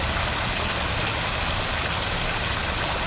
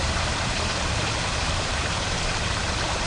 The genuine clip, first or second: first